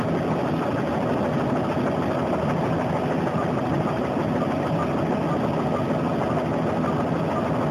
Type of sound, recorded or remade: recorded